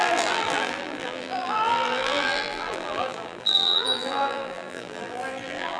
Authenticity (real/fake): fake